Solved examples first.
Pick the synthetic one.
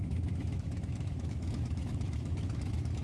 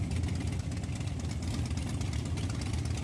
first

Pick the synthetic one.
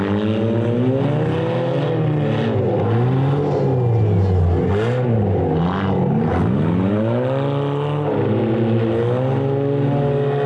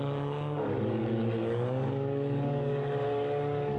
second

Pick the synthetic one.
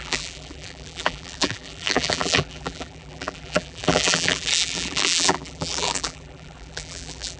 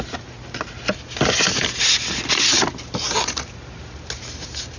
first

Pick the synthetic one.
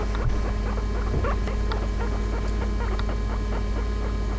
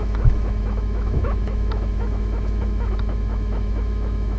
second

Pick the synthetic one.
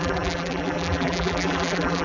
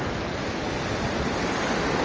first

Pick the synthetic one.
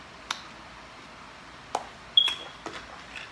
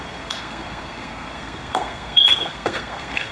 second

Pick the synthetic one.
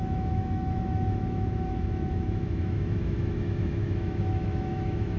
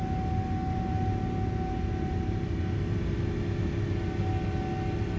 first